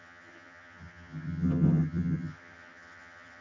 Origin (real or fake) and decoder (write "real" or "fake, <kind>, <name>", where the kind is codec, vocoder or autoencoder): fake, vocoder, HiFi-GAN